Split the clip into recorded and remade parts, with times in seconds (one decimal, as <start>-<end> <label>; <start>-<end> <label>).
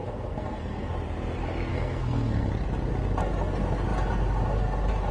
0.0-0.9 remade; 0.9-1.7 recorded; 1.7-2.5 remade; 2.5-5.1 recorded